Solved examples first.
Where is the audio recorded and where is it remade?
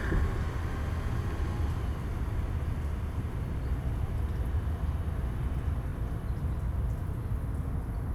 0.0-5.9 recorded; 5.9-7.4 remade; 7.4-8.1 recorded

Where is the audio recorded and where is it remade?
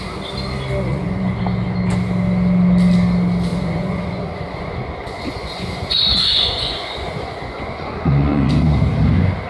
0.0-0.9 recorded; 0.9-1.4 remade; 1.4-3.5 recorded; 3.5-8.5 remade; 8.5-9.5 recorded